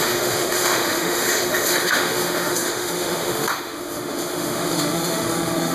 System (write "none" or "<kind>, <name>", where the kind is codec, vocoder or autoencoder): autoencoder, DAC-VAE